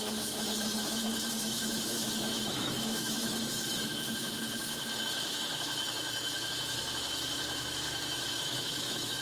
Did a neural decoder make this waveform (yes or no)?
yes